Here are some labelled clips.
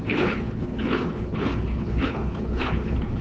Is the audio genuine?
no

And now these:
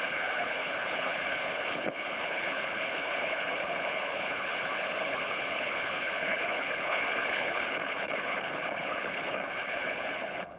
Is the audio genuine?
no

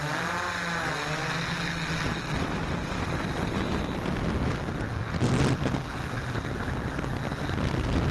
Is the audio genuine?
yes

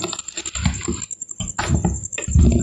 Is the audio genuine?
yes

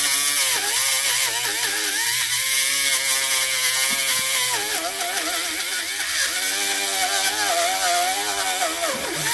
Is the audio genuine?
yes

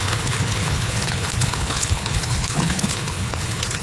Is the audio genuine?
no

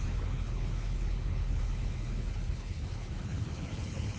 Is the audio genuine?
no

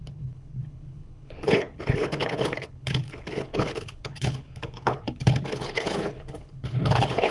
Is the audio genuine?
no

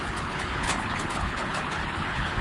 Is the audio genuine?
no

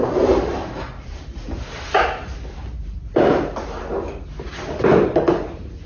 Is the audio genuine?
yes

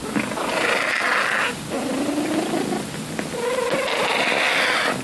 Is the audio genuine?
yes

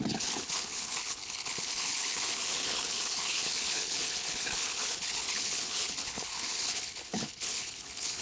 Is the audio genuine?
no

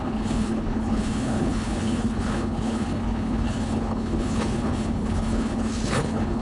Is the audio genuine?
no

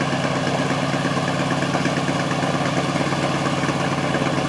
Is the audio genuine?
yes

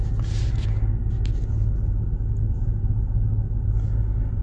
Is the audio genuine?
yes